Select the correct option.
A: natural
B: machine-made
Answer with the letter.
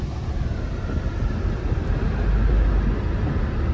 A